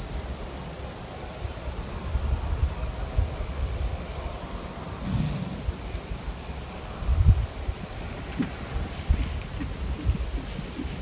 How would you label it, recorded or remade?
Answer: recorded